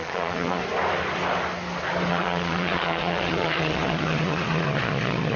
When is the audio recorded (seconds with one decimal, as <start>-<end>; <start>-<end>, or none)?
0.6-2.1